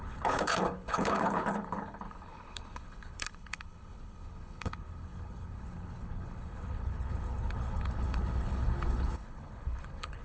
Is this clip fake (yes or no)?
yes